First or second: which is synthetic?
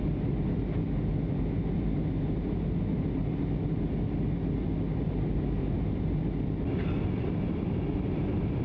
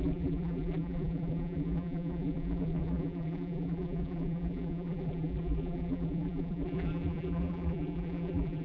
second